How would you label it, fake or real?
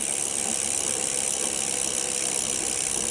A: real